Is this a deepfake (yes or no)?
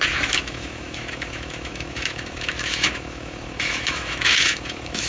yes